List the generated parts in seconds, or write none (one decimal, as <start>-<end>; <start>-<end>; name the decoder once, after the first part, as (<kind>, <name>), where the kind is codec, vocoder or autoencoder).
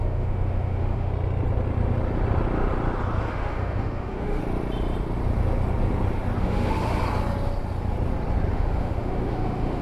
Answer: 0.0-1.1 (autoencoder, DAC-VAE); 3.3-4.4; 6.4-7.0; 8.5-9.8